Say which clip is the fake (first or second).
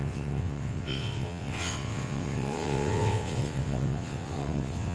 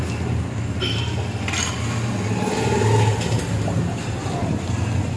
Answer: first